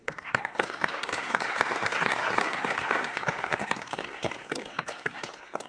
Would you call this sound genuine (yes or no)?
no